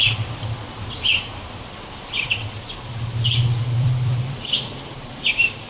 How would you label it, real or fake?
fake